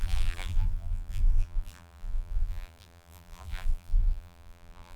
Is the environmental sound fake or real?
fake